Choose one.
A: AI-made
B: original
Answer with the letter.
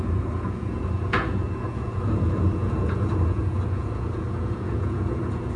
A